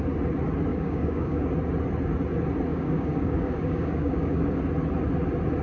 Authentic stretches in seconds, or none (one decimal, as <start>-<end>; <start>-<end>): 0.0-0.7; 1.5-2.7; 4.6-5.6